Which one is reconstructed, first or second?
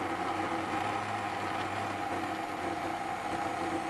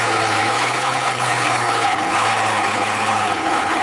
second